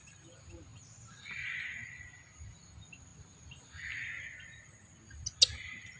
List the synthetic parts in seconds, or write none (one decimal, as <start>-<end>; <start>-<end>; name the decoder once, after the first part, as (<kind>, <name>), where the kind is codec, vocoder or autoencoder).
none